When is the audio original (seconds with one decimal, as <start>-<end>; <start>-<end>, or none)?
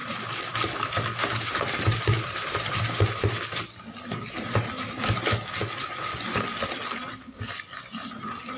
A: 5.2-6.1; 7.4-8.6